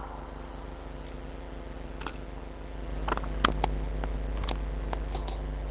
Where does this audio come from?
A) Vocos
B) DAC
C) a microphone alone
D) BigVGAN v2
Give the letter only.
C